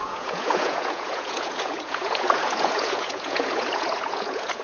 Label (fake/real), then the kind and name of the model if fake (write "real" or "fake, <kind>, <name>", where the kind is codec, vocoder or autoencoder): fake, vocoder, Vocos